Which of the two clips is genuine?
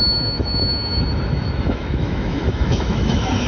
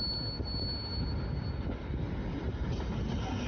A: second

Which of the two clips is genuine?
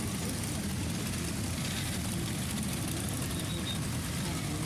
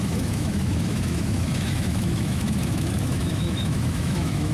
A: first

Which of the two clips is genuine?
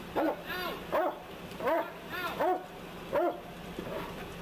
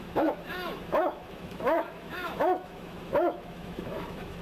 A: first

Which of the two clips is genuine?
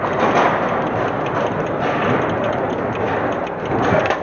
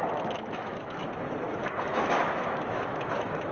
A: first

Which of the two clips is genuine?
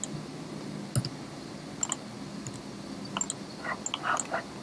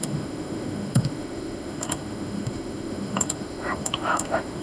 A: first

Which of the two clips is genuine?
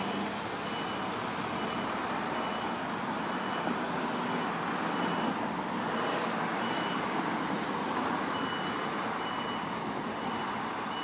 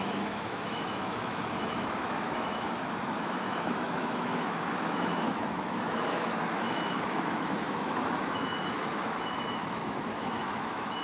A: first